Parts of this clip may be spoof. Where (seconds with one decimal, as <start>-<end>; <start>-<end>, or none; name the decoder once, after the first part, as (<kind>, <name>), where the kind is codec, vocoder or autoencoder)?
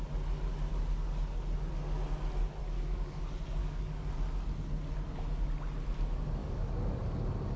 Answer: 2.6-3.2 (codec, DAC); 3.6-4.1; 6.4-7.0